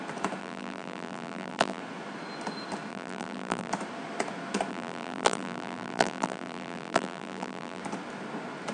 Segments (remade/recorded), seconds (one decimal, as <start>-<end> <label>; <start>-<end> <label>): 0.0-0.4 recorded; 0.4-1.8 remade; 1.8-2.9 recorded; 2.9-3.7 remade; 3.7-4.7 recorded; 4.7-7.8 remade; 7.8-8.7 recorded